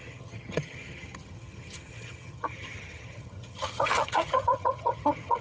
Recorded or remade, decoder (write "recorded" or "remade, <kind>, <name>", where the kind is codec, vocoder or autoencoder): remade, vocoder, HiFi-GAN